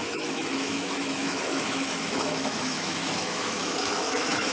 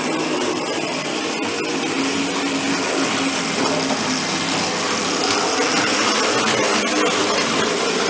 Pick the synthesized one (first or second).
first